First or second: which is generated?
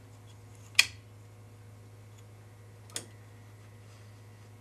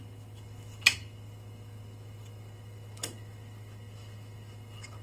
second